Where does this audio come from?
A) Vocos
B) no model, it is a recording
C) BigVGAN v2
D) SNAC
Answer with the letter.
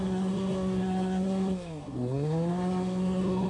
D